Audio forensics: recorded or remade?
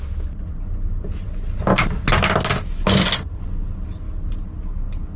recorded